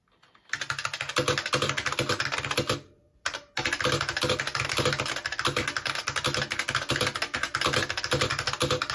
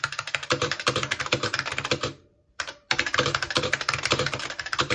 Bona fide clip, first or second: first